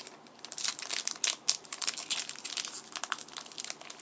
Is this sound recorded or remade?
recorded